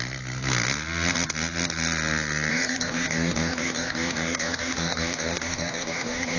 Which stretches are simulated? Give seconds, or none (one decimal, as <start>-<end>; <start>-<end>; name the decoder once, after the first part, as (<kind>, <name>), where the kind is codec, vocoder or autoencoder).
2.5-6.4 (codec, DAC)